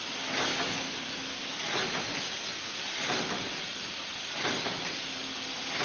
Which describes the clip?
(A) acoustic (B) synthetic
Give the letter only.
A